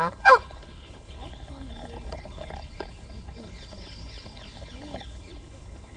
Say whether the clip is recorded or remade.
remade